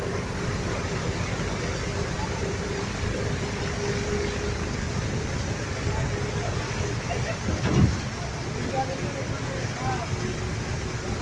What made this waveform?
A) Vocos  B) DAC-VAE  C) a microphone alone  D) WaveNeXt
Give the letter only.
C